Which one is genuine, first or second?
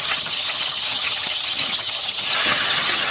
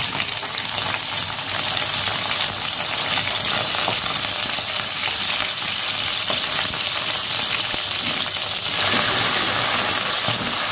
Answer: second